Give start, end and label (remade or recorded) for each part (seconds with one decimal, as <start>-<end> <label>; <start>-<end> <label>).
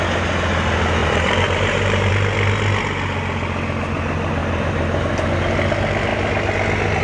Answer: 0.0-1.0 recorded; 1.0-2.1 remade; 2.1-4.4 recorded; 4.4-5.0 remade; 5.0-7.0 recorded